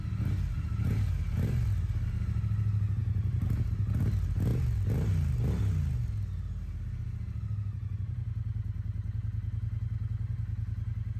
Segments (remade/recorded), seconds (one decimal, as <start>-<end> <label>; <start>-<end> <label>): 0.0-11.2 recorded

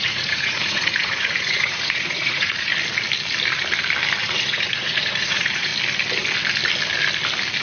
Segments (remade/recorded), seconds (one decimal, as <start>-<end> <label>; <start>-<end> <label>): 0.0-2.7 remade; 2.7-4.2 recorded; 4.2-5.7 remade; 5.7-7.6 recorded